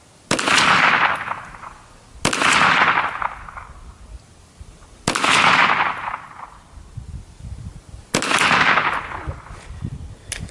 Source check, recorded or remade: recorded